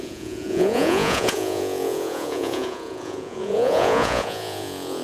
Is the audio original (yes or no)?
no